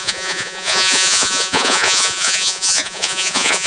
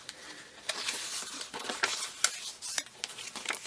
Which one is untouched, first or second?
second